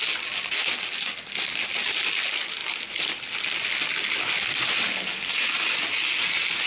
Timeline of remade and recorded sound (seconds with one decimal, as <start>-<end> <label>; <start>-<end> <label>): 0.0-6.7 recorded